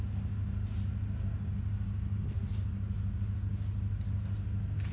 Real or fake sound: real